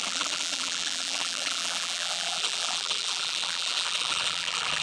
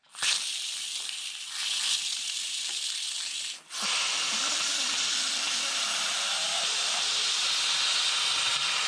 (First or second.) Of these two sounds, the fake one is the first